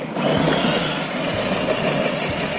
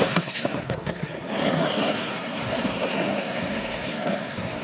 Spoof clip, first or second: second